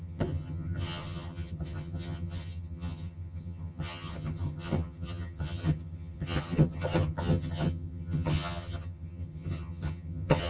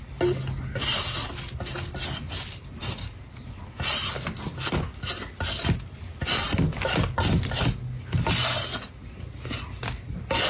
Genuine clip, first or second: second